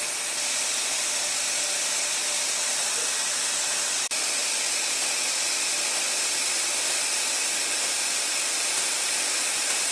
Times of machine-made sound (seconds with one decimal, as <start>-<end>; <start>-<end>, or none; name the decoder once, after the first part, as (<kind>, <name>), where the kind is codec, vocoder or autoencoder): none